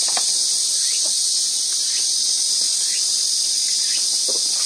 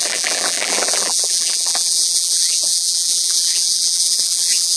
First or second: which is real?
first